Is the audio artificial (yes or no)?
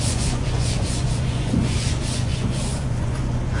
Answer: yes